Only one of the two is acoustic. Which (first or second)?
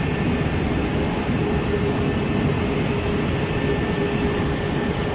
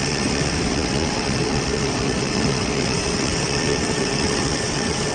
first